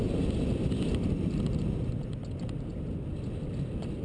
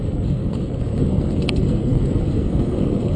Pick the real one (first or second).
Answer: first